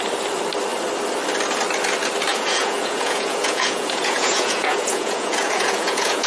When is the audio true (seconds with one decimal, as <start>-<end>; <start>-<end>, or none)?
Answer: 0.0-2.3